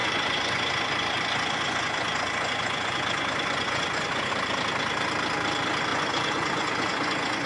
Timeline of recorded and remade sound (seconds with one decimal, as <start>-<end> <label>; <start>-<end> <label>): 0.0-4.3 remade; 4.3-5.9 recorded; 5.9-7.5 remade